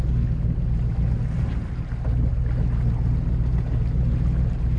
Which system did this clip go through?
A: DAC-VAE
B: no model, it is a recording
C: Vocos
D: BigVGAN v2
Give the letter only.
B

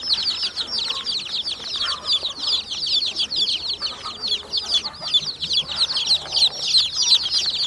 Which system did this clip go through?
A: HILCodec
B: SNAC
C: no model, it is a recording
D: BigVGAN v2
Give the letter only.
C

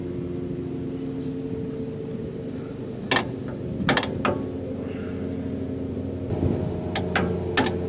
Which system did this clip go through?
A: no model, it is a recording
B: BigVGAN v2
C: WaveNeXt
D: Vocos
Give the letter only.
A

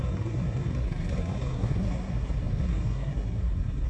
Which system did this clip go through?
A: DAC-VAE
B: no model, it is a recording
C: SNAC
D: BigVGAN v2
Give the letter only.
C